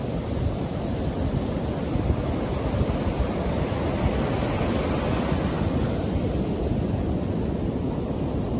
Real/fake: real